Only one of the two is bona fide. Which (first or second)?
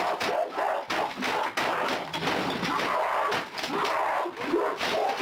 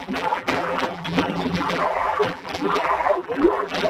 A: first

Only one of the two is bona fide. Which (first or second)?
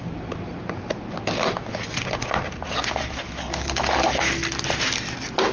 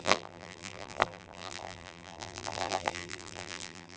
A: first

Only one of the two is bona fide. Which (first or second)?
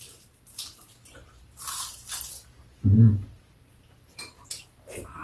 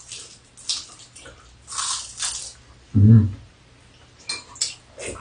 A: second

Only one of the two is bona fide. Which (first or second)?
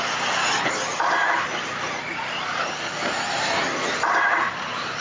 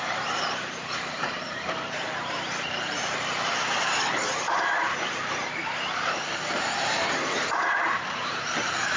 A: first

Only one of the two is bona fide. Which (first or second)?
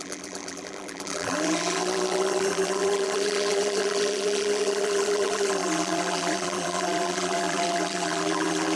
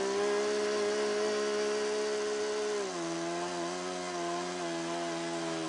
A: second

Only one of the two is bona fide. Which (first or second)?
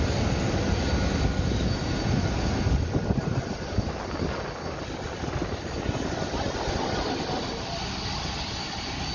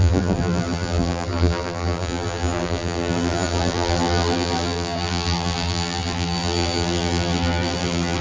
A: first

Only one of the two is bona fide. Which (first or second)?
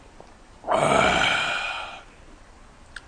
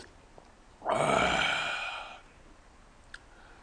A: second